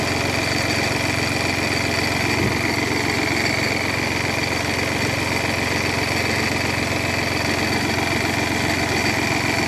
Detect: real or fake real